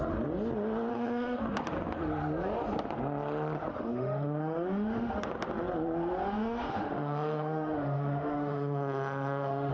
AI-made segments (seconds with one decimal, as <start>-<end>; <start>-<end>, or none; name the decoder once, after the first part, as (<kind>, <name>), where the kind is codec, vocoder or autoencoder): 0.9-1.4 (autoencoder, DAC-VAE); 3.7-5.3; 6.2-9.7